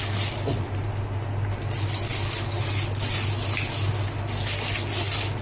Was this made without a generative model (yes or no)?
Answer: yes